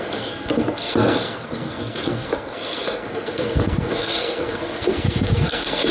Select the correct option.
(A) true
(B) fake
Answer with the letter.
B